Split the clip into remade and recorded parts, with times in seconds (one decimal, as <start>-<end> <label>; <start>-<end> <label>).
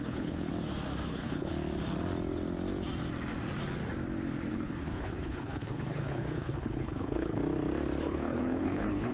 0.0-0.5 remade; 0.5-1.1 recorded; 1.1-1.5 remade; 1.5-4.5 recorded; 4.5-7.4 remade; 7.4-8.0 recorded; 8.0-9.1 remade